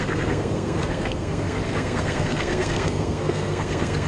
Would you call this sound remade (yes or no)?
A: yes